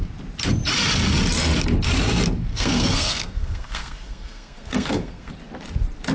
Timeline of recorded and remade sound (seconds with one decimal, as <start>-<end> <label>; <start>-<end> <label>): 0.0-2.5 recorded; 2.5-5.3 remade; 5.3-6.1 recorded